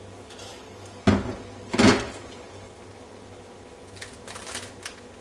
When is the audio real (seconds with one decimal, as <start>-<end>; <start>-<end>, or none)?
0.0-5.2